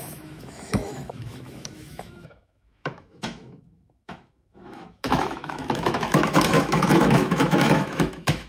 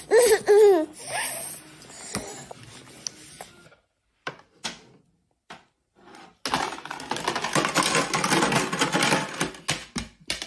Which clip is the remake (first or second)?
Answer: first